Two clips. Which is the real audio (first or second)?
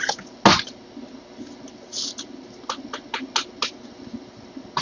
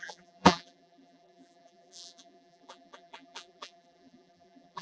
first